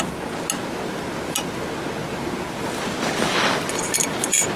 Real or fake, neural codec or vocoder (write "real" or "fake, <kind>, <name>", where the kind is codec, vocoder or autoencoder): real